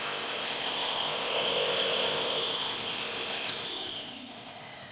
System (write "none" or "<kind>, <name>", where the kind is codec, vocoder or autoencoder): codec, ZipCodec